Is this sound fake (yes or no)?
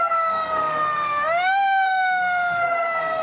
yes